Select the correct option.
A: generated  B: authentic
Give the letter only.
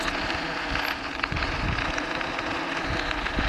B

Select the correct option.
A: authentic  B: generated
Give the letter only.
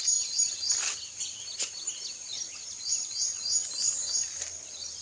A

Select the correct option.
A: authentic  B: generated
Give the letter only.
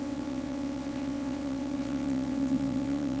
B